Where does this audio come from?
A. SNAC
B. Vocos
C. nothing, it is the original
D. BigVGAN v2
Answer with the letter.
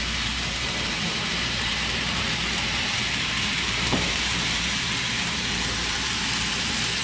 D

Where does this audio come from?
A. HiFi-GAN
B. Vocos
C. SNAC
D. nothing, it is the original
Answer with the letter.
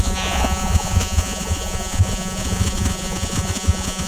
B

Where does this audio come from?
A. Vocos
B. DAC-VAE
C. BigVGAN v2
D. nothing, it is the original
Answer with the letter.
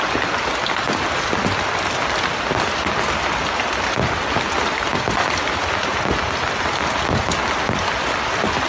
D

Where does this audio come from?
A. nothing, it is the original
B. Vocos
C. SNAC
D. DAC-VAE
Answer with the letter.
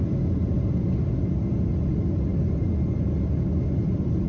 A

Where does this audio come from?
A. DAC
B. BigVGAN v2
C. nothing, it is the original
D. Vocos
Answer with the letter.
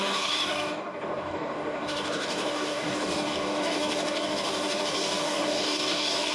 A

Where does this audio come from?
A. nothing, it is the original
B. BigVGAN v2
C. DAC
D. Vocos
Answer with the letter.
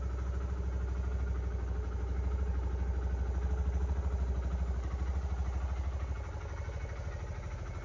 A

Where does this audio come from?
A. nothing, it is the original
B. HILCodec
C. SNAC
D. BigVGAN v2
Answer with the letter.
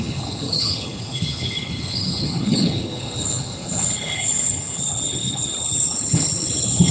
B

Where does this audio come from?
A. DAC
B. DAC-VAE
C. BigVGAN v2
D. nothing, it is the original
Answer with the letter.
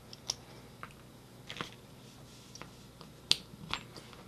D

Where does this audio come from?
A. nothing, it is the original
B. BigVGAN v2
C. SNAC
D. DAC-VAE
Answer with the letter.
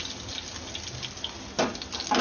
A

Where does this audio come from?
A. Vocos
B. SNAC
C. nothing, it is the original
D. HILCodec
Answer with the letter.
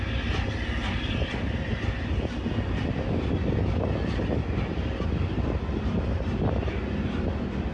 C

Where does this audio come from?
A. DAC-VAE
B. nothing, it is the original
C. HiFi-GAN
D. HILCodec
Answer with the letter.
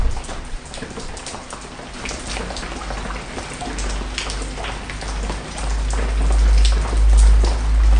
B